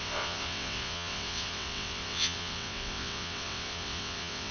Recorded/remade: remade